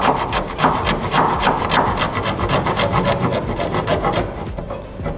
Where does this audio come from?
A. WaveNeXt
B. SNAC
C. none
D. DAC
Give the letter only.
C